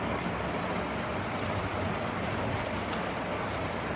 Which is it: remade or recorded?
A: recorded